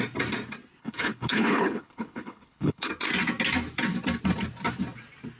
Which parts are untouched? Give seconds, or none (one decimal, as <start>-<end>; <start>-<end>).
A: 0.0-0.8; 2.9-5.4